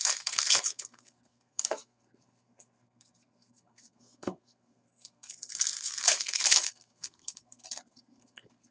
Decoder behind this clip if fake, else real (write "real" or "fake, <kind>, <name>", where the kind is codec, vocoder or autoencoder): fake, codec, SNAC